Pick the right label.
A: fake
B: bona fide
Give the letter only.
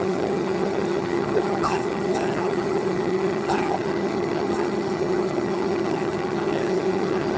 A